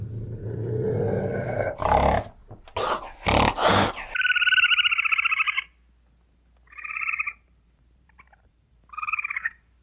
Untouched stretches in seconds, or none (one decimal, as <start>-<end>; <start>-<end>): 0.6-1.3; 2.4-7.1